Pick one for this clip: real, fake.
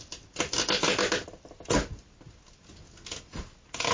real